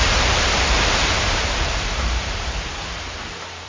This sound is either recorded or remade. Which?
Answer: remade